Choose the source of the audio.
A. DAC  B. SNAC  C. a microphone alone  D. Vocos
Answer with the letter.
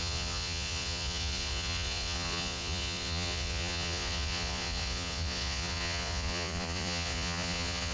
D